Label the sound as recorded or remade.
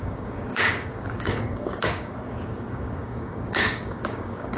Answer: remade